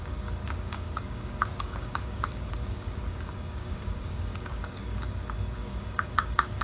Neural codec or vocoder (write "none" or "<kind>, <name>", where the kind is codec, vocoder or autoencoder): codec, DAC